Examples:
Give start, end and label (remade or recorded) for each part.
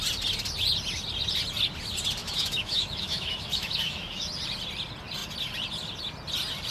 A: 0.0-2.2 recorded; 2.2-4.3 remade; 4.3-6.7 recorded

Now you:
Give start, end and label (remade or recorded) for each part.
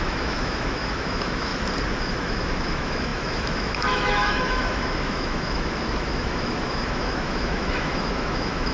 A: 0.0-1.5 remade; 1.5-2.0 recorded; 2.0-8.7 remade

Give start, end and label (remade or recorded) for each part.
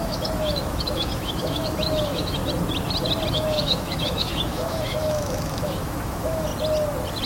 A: 0.0-2.4 remade; 2.4-3.3 recorded; 3.3-6.5 remade; 6.5-7.3 recorded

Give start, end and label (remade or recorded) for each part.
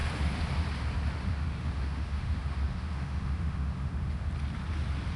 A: 0.0-1.3 recorded; 1.3-4.3 remade; 4.3-5.2 recorded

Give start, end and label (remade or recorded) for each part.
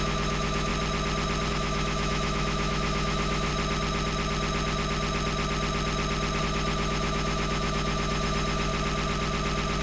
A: 0.0-0.7 remade; 0.7-1.5 recorded; 1.5-3.5 remade; 3.5-6.4 recorded; 6.4-8.7 remade; 8.7-9.8 recorded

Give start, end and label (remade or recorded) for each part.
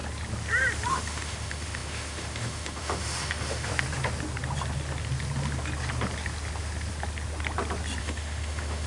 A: 0.0-0.9 recorded; 0.9-3.7 remade; 3.7-8.0 recorded; 8.0-8.9 remade